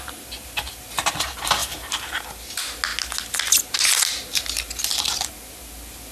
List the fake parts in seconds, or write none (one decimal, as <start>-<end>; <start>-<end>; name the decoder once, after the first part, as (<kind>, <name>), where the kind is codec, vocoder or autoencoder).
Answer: 1.6-2.1 (vocoder, BigVGAN v2)